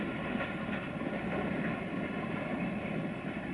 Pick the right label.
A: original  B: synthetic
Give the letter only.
A